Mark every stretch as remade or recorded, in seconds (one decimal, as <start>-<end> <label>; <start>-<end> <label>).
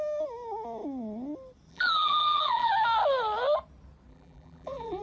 0.0-1.7 recorded; 1.7-2.7 remade; 2.7-4.1 recorded; 4.1-5.0 remade